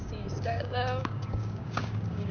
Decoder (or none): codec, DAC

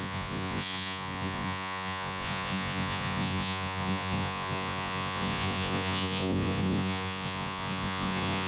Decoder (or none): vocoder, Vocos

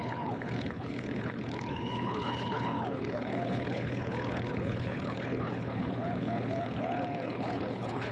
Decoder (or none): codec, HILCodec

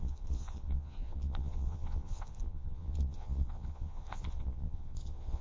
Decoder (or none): vocoder, Vocos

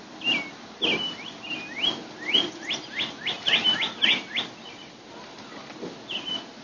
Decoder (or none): none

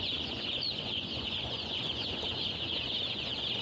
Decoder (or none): vocoder, Vocos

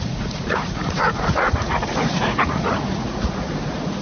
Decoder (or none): vocoder, Vocos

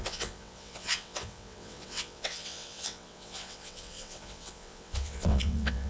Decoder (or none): vocoder, WaveNeXt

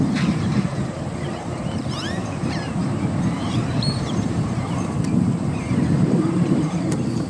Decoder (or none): vocoder, BigVGAN v2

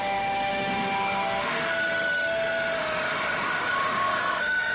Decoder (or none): autoencoder, DAC-VAE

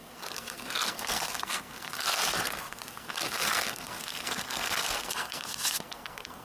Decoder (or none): codec, SNAC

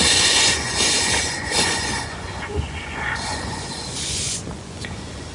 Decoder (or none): vocoder, Vocos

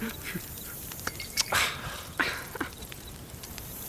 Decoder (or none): vocoder, BigVGAN v2